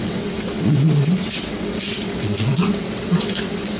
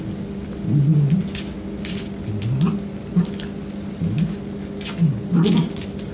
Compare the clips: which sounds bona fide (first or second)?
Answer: second